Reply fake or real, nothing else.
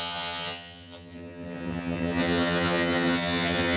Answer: fake